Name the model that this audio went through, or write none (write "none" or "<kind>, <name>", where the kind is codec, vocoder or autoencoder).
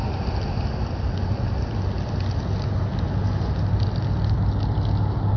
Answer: none